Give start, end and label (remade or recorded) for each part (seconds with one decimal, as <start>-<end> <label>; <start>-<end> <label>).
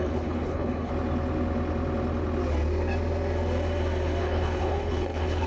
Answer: 0.0-0.9 remade; 0.9-4.2 recorded; 4.2-5.5 remade